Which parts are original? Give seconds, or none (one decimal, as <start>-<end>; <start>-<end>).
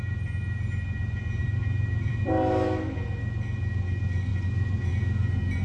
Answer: 0.0-1.4; 2.2-4.3; 4.9-5.6